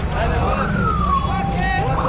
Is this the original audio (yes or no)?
yes